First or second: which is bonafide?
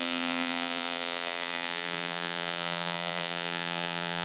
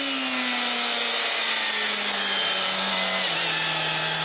second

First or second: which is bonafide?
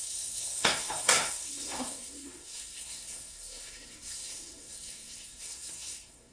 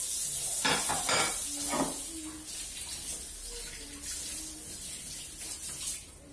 second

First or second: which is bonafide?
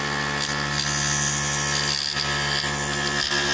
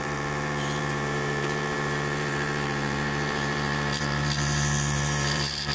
first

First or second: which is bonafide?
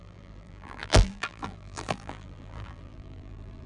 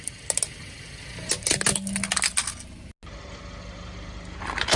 second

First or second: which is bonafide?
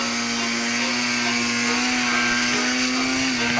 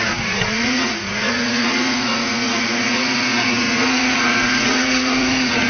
first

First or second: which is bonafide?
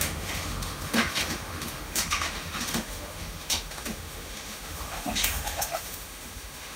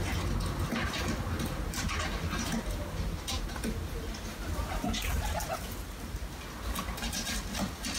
second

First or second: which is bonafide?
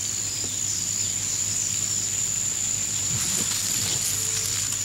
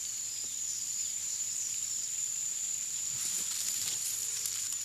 first